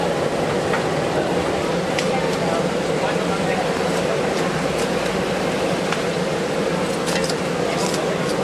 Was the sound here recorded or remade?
recorded